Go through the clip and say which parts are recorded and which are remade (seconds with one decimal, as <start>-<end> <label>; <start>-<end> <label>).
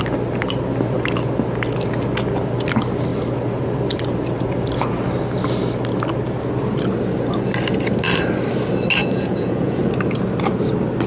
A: 0.0-9.0 recorded; 9.0-9.8 remade; 9.8-11.1 recorded